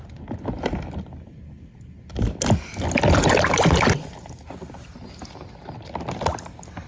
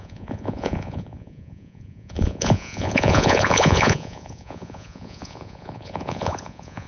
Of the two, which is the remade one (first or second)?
second